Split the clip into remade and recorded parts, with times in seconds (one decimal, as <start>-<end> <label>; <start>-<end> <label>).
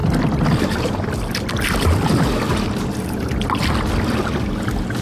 0.0-5.0 recorded